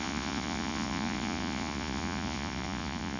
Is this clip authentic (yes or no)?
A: no